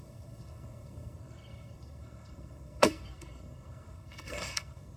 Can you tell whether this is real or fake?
fake